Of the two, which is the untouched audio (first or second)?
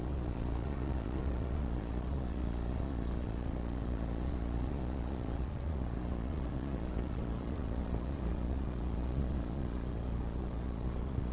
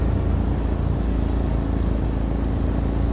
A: second